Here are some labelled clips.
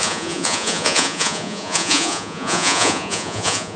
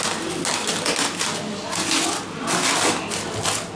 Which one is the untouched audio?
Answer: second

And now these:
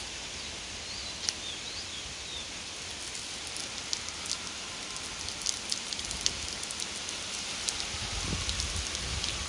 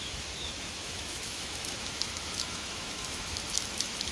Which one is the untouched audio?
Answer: first